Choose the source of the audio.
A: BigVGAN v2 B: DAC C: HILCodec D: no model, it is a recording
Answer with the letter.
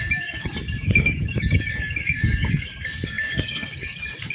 B